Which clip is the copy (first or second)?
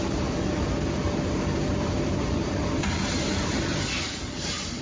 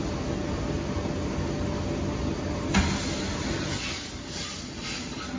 first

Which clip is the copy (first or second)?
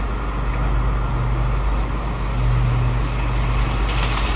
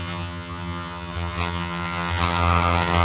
second